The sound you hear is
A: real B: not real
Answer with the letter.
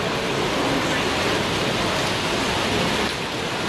A